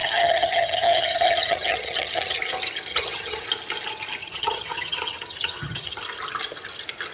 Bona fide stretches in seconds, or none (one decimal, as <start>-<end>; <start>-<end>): 2.4-2.9; 3.4-4.2; 6.0-7.1